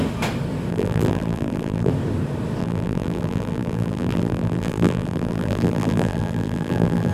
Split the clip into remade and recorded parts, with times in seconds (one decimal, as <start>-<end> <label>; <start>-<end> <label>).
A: 0.0-0.7 recorded; 0.7-1.9 remade; 1.9-2.6 recorded; 2.6-7.1 remade